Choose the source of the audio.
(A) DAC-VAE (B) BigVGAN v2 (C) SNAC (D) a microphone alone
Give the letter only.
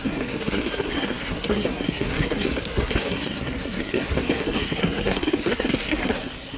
C